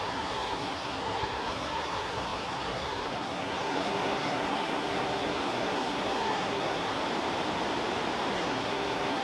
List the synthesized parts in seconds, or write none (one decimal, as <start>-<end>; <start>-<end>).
0.0-7.0; 8.3-9.2